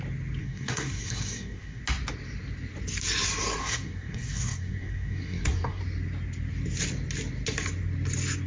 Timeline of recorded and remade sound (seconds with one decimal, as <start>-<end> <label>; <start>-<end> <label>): 0.0-0.4 recorded; 0.4-1.8 remade; 1.8-3.6 recorded; 3.6-5.8 remade; 5.8-8.5 recorded